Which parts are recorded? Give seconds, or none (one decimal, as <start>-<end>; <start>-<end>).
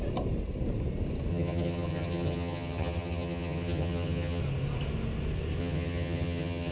0.0-1.3; 4.4-5.6